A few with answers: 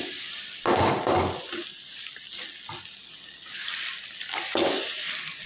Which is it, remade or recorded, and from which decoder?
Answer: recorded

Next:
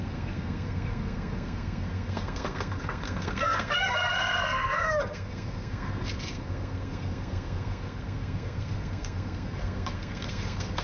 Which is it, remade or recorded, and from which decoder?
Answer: remade, codec, SNAC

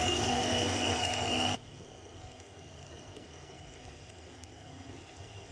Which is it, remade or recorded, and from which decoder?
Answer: remade, codec, SNAC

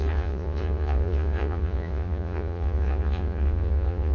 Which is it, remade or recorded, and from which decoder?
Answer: remade, vocoder, Vocos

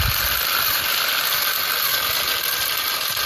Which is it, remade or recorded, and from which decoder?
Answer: recorded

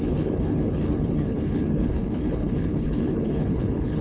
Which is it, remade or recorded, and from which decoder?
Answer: remade, codec, HILCodec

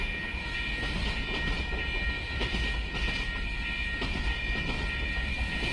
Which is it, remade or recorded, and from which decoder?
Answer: recorded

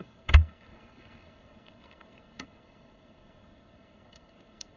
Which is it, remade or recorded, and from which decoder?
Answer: remade, codec, SNAC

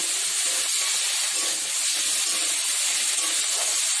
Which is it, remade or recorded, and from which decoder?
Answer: recorded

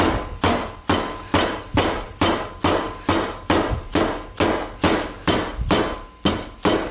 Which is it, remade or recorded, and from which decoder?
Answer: recorded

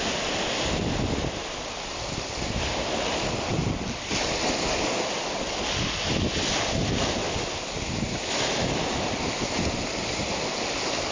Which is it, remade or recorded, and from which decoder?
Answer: recorded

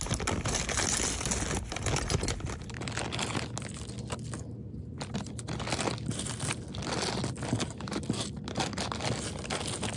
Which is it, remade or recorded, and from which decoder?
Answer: recorded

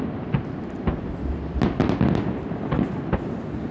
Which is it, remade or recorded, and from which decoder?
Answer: recorded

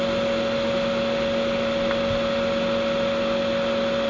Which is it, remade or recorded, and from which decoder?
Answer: recorded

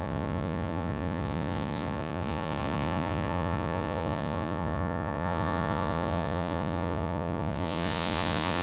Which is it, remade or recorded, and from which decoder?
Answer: remade, vocoder, Vocos